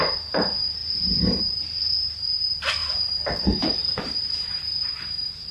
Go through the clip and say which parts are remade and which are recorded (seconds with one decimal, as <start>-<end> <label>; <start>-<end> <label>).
0.0-2.8 remade; 2.8-3.4 recorded; 3.4-5.5 remade